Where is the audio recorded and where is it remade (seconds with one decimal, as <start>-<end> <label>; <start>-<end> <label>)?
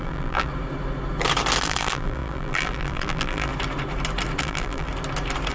0.0-0.5 remade; 0.5-1.6 recorded; 1.6-3.5 remade; 3.5-4.4 recorded; 4.4-4.9 remade; 4.9-5.5 recorded